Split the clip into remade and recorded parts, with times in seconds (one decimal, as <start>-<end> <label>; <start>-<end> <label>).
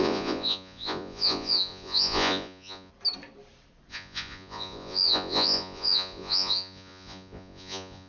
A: 0.0-2.9 remade; 2.9-3.9 recorded; 3.9-8.1 remade